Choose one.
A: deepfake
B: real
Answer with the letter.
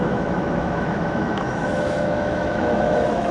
A